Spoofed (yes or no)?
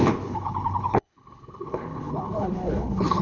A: yes